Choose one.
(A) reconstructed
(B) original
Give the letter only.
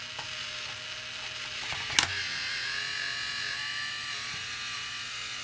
B